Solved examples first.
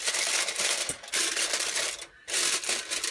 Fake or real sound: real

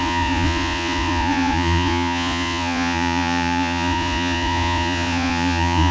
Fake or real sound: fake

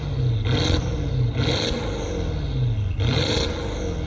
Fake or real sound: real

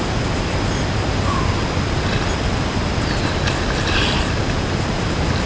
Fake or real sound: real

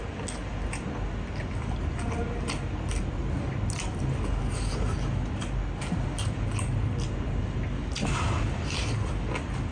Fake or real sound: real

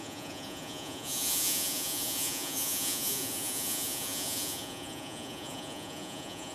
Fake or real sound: fake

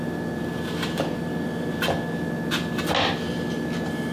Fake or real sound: real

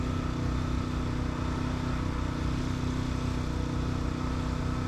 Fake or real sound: real